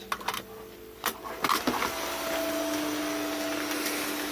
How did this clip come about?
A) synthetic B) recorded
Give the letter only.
B